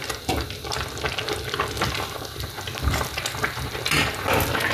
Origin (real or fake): real